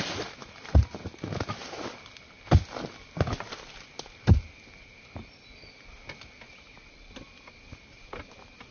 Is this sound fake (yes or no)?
no